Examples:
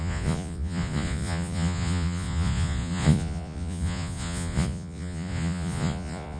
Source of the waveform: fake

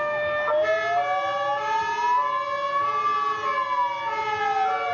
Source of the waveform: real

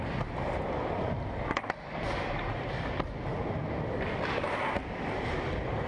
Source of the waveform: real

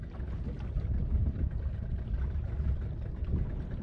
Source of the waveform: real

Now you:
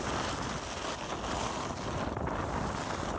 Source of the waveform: real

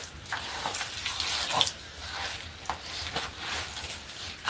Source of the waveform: real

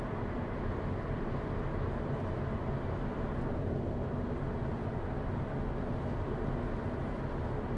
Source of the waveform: real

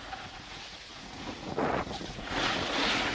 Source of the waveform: fake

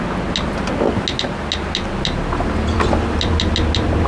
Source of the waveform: real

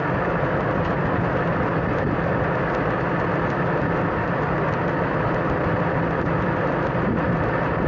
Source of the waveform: real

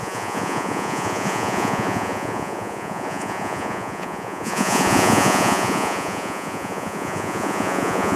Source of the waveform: fake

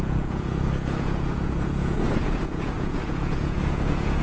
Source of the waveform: fake